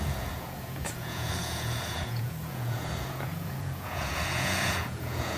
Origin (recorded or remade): remade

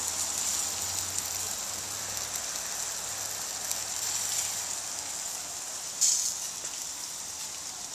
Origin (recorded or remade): recorded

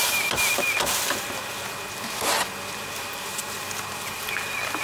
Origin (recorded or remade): recorded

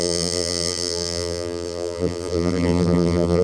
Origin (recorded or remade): remade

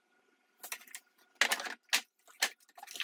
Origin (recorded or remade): recorded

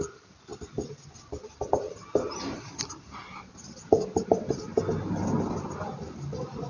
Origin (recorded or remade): recorded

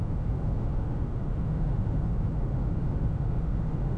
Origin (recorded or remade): remade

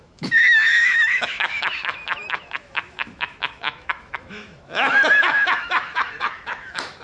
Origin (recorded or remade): remade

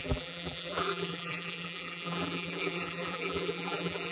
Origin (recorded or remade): remade